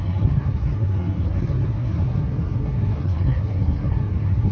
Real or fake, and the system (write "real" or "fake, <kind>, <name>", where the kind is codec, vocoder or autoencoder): fake, codec, SNAC